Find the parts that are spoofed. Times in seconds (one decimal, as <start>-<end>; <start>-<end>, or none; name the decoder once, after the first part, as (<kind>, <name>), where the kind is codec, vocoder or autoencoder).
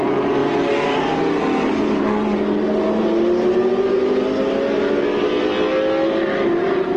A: none